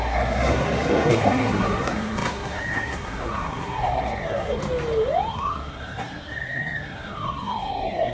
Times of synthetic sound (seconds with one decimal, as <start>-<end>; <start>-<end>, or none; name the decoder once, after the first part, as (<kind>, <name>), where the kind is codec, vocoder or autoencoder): 0.0-4.6 (codec, SNAC); 5.3-8.1